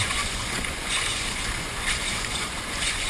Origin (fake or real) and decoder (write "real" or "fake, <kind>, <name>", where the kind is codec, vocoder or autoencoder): fake, vocoder, Vocos